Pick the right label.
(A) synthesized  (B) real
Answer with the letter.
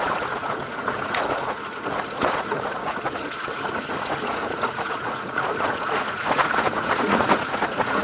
A